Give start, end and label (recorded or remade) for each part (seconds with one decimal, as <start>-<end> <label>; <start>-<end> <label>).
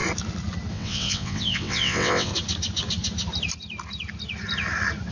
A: 0.0-0.7 recorded; 0.7-2.3 remade; 2.3-5.1 recorded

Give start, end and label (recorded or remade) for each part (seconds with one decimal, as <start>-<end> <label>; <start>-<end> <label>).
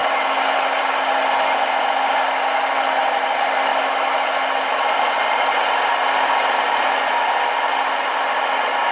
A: 0.0-8.9 recorded